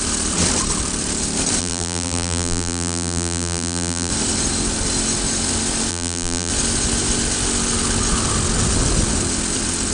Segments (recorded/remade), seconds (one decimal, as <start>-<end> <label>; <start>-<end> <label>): 0.0-1.6 recorded; 1.6-4.1 remade; 4.1-5.9 recorded; 5.9-6.5 remade; 6.5-9.9 recorded